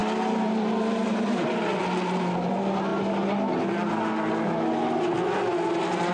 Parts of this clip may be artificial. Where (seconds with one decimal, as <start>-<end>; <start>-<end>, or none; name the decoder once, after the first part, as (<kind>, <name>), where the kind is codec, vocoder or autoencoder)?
0.0-1.8 (vocoder, BigVGAN v2)